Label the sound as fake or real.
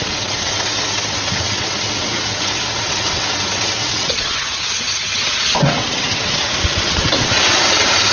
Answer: fake